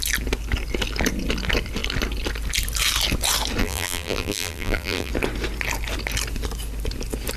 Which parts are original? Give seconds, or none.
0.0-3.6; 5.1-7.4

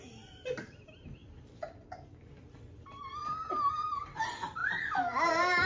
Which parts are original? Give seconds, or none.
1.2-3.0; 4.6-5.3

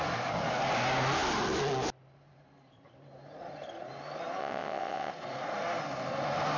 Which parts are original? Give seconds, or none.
0.0-4.4; 5.1-6.6